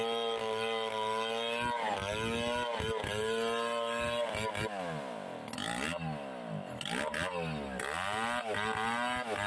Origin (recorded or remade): recorded